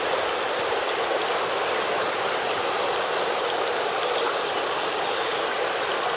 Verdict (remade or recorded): recorded